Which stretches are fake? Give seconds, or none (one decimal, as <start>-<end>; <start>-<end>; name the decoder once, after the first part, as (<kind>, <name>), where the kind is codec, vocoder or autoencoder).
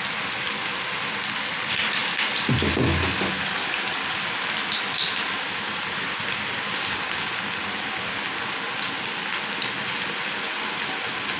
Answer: none